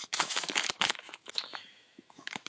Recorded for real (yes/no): no